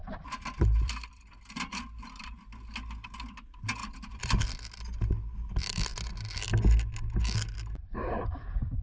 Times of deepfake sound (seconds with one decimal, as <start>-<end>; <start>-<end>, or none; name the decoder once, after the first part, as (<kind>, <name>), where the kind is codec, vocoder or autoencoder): 0.0-2.3 (vocoder, BigVGAN v2); 3.8-4.4